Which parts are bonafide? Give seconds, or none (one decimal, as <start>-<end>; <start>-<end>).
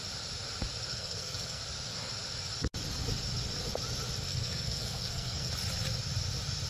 0.0-0.9; 1.6-4.3; 5.5-6.7